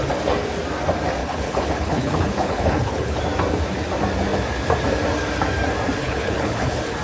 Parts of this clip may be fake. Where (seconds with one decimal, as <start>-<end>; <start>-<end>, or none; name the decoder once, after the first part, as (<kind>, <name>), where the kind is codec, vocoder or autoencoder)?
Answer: 1.2-3.2 (codec, HILCodec); 6.0-7.0